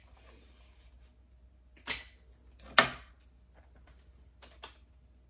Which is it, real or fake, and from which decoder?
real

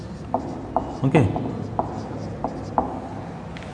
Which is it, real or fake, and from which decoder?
real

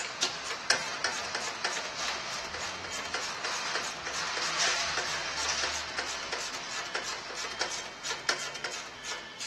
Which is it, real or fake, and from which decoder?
real